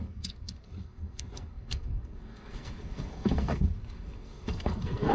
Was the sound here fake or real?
fake